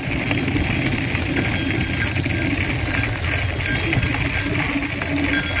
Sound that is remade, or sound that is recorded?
recorded